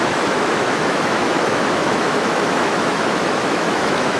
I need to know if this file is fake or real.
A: fake